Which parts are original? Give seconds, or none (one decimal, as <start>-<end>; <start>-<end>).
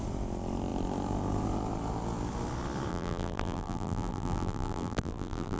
0.0-2.9